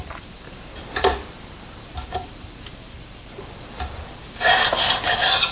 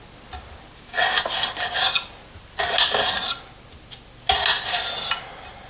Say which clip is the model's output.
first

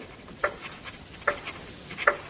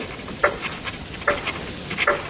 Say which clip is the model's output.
second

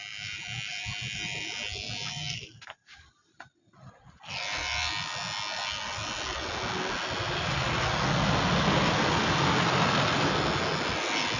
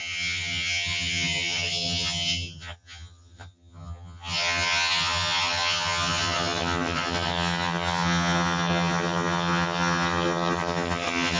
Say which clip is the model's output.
second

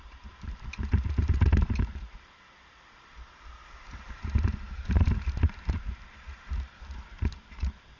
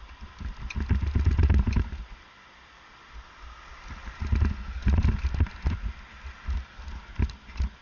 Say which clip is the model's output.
first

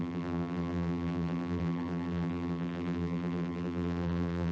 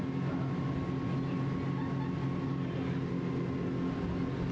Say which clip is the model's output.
first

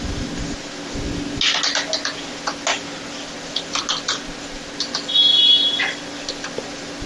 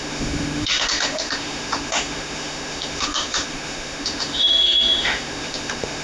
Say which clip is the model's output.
second